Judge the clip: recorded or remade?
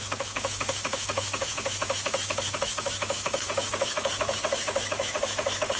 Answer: remade